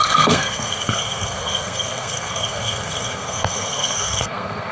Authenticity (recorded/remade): remade